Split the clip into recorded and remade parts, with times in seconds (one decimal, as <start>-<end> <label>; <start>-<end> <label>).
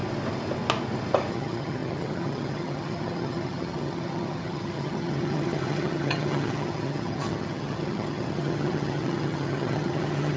0.0-1.3 recorded; 1.3-10.4 remade